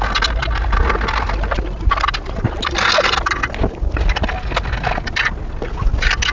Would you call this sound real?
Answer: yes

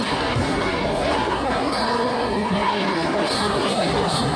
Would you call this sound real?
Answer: no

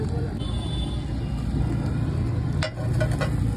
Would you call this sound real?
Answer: yes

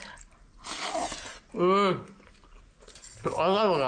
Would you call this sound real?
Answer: yes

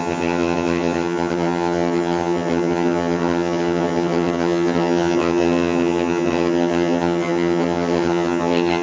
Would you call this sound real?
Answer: no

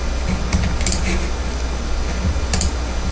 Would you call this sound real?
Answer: yes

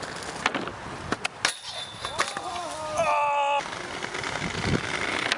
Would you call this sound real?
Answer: yes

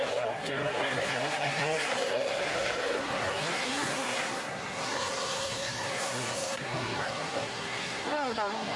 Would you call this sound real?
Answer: no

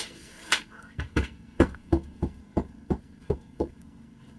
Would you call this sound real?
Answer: no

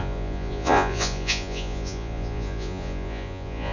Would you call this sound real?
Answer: no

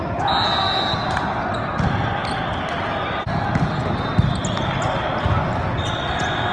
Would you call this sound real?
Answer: yes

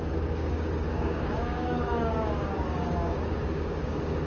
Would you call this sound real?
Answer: no